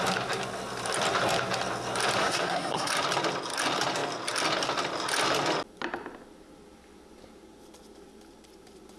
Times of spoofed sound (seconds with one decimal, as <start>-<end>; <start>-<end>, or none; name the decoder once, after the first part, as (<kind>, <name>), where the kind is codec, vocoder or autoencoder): 2.2-2.9 (codec, SNAC)